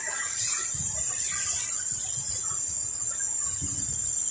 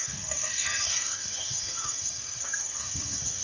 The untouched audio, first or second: first